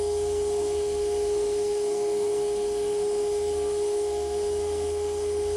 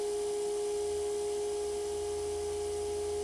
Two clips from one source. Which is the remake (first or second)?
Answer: first